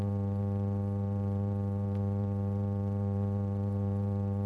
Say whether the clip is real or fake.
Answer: fake